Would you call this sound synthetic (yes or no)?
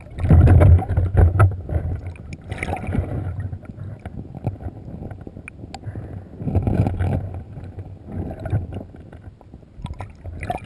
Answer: no